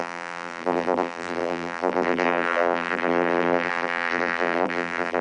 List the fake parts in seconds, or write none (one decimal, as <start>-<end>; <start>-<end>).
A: 0.0-5.2